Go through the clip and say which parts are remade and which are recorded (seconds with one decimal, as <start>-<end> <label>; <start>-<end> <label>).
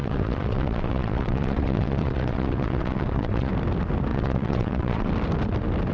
0.0-3.5 remade; 3.5-4.1 recorded; 4.1-5.1 remade; 5.1-5.9 recorded